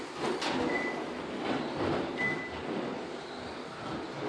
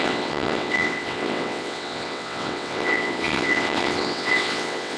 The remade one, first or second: second